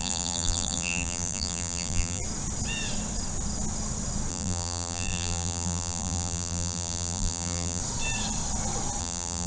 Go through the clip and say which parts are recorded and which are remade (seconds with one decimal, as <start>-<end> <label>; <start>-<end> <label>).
0.0-2.2 remade; 2.2-4.3 recorded; 4.3-7.8 remade; 7.8-9.0 recorded; 9.0-9.5 remade